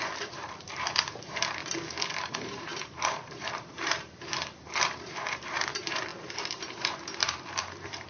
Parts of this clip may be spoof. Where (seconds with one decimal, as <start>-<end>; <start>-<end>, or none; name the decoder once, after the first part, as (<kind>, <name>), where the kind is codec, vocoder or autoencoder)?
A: 0.0-1.6 (vocoder, BigVGAN v2); 2.3-8.1